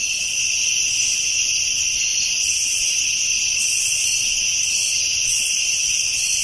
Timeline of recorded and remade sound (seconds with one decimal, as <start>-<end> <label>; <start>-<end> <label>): 0.0-6.4 recorded